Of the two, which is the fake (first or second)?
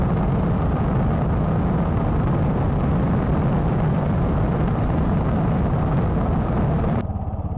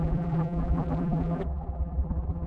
second